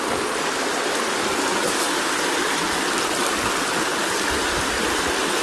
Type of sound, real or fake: real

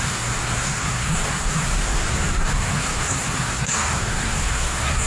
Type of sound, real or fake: fake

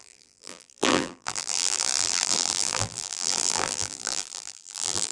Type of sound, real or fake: fake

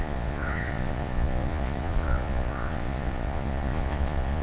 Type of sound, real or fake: fake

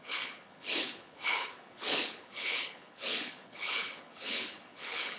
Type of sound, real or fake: fake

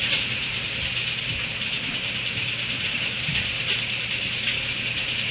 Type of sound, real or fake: fake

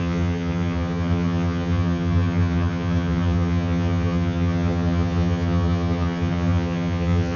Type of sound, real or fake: fake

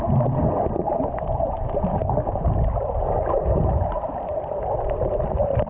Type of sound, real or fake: fake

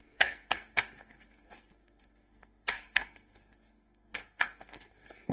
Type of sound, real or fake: fake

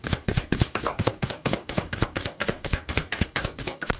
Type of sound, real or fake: fake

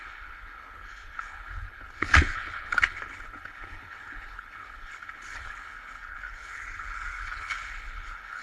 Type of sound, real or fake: fake